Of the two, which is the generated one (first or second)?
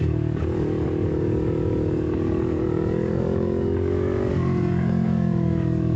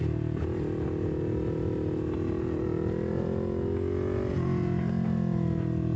first